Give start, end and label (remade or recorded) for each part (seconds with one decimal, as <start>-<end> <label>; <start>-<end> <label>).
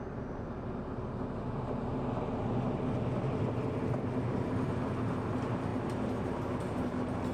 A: 0.0-7.3 recorded